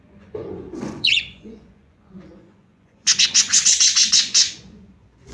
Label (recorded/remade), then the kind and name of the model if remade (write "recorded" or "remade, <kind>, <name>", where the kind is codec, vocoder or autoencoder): remade, vocoder, Vocos